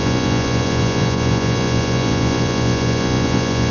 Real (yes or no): no